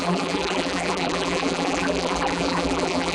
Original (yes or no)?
no